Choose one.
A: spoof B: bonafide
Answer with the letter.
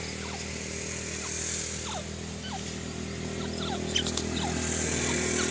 B